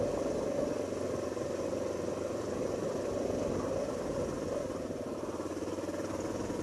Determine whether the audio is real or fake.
real